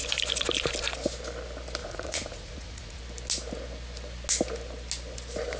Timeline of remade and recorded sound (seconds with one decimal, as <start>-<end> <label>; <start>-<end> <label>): 0.0-1.8 recorded; 1.8-3.0 remade; 3.0-5.6 recorded